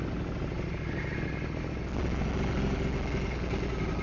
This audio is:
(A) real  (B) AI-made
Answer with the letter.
A